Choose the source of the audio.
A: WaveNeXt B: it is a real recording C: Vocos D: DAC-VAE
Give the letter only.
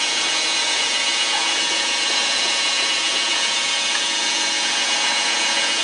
C